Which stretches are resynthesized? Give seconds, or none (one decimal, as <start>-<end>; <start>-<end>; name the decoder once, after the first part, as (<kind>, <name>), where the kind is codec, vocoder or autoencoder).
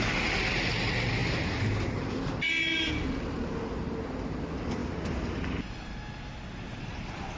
none